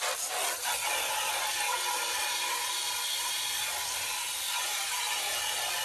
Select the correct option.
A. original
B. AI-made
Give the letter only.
A